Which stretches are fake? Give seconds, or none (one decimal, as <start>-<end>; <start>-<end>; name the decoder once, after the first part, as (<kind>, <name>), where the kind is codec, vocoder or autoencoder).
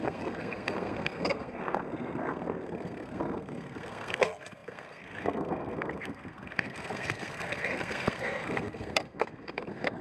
0.0-10.0 (codec, SNAC)